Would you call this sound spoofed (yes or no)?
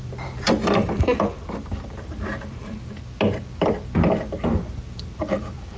yes